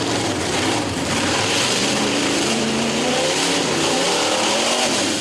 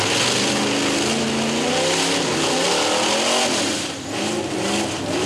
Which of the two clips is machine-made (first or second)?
first